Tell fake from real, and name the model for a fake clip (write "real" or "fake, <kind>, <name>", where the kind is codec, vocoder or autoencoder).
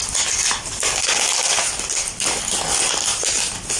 real